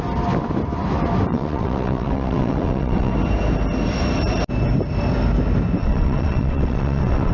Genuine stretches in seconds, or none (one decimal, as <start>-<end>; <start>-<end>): 0.0-1.3; 3.1-5.8